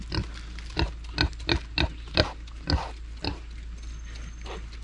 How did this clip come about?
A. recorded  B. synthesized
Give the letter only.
A